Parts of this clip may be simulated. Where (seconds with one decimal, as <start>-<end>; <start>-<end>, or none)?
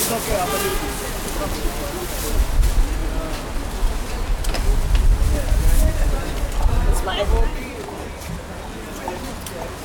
0.7-2.1; 7.5-8.6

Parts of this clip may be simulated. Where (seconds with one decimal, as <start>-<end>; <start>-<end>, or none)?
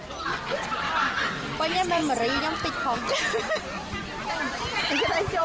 none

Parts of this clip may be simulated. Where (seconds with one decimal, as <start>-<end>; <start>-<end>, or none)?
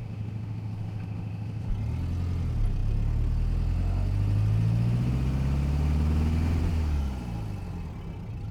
0.0-1.7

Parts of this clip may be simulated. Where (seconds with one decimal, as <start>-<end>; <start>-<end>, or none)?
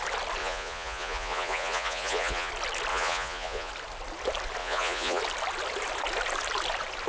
0.4-2.5; 2.9-3.7; 4.6-5.2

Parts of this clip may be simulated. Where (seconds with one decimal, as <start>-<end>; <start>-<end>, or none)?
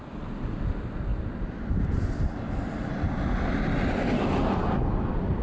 none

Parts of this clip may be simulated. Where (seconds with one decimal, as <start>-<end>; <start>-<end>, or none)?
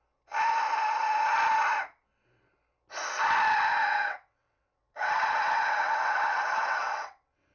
3.7-7.5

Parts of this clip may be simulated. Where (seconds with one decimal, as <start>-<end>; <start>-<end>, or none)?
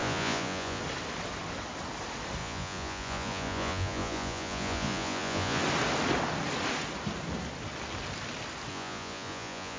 0.0-0.8; 2.4-5.6; 8.7-9.8